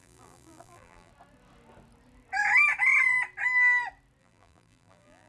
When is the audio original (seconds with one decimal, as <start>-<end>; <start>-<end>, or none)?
1.1-4.2